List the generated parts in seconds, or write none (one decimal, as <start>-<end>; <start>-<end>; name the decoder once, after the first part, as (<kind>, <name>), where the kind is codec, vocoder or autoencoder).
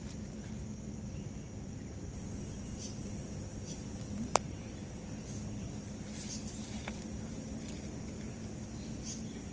none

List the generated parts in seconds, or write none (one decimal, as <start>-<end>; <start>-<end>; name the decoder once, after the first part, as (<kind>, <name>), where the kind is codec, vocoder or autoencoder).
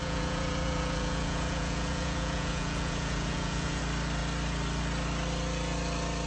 0.0-3.8 (vocoder, Vocos)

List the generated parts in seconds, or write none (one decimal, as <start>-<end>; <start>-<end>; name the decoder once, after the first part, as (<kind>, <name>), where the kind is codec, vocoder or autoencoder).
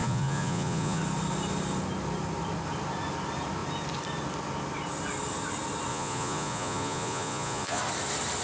0.0-1.0 (vocoder, Vocos); 5.9-7.8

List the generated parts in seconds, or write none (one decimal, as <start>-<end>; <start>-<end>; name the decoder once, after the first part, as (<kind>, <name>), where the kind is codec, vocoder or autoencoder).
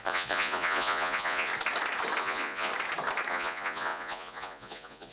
0.0-1.5 (vocoder, Vocos); 2.2-2.7; 3.3-5.1